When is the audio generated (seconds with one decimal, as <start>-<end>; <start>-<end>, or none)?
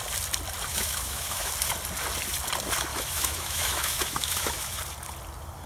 0.7-1.5; 2.9-4.8